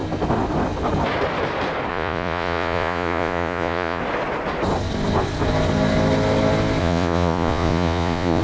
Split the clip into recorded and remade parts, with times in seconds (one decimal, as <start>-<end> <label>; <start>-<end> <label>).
0.0-1.9 recorded; 1.9-4.0 remade; 4.0-6.8 recorded; 6.8-8.4 remade